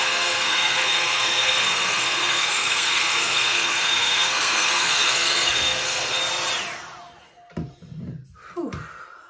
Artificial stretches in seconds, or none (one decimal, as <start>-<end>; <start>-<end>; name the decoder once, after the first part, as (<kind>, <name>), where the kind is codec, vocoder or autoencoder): 0.0-6.2 (codec, SNAC)